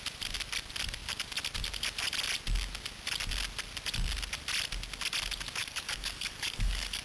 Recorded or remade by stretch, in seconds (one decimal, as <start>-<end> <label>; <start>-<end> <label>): 0.0-5.6 recorded; 5.6-7.0 remade